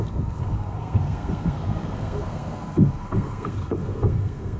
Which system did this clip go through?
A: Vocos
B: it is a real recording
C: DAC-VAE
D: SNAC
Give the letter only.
D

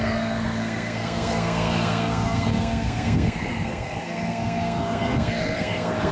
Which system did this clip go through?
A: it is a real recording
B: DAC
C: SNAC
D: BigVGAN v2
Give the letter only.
C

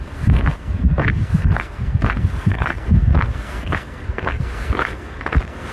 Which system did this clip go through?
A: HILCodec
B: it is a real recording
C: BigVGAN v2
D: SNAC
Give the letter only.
D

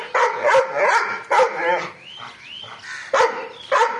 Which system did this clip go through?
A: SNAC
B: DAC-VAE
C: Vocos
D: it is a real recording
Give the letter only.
D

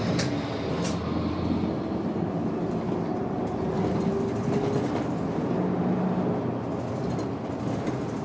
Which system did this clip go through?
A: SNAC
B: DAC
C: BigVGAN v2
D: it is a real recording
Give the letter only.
D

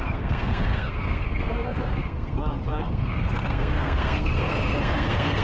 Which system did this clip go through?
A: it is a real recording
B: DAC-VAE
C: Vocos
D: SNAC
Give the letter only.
D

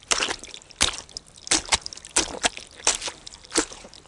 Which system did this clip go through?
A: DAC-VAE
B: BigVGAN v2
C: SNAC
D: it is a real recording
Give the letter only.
D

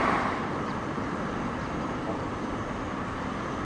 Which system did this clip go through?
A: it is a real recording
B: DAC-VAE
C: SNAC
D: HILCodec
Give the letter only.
A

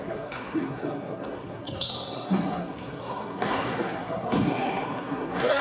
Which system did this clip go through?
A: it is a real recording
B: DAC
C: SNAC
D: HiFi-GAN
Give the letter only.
C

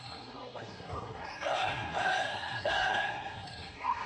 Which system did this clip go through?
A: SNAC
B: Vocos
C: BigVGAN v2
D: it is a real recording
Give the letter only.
A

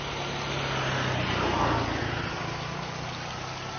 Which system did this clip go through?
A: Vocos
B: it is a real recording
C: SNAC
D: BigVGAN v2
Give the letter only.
B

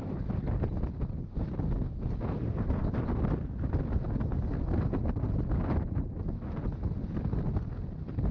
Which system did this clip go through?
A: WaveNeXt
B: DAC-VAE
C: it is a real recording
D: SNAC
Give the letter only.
C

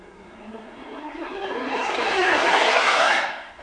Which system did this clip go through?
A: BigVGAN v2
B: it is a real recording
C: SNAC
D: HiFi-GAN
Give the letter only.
C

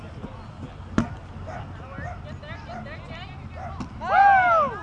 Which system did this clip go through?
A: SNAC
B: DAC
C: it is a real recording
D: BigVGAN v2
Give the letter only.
C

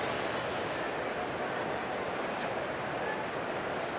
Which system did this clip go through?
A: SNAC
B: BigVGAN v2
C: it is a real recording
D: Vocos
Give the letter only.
C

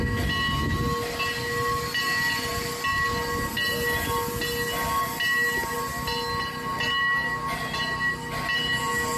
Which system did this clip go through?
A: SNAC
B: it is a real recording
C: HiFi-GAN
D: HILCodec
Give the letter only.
B